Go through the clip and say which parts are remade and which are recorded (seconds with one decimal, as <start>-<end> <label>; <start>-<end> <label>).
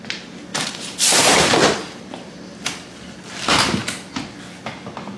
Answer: 0.0-0.5 recorded; 0.5-2.6 remade; 2.6-5.2 recorded